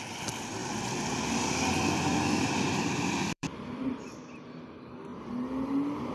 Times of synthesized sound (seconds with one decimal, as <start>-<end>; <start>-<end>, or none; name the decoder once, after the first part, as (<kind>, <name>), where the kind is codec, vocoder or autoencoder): 2.1-4.1 (vocoder, BigVGAN v2)

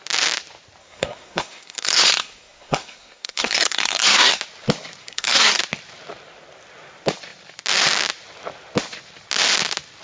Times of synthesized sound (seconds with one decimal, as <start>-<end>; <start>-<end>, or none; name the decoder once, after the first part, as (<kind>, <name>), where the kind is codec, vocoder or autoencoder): 0.8-4.4 (codec, SNAC); 5.0-5.6

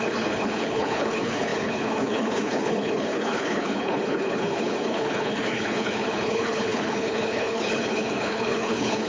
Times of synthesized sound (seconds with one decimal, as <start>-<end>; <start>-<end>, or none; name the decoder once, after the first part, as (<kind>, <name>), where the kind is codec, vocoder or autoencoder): 0.0-9.1 (codec, HILCodec)